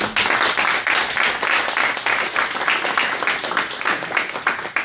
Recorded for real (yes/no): yes